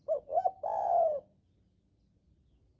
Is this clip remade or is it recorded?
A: recorded